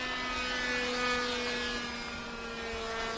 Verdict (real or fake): real